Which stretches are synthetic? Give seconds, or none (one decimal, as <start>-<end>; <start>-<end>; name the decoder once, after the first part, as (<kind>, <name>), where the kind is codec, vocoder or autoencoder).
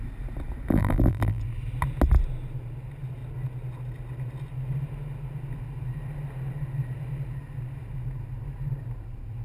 0.7-1.4 (vocoder, BigVGAN v2)